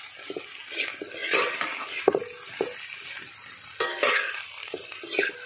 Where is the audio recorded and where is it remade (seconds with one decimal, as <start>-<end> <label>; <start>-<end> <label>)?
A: 0.0-5.5 recorded